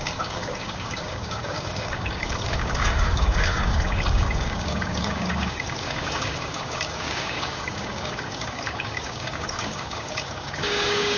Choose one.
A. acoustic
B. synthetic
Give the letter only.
B